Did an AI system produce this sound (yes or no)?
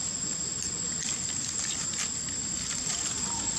no